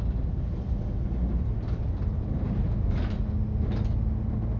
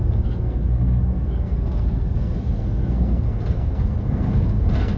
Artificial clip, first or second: second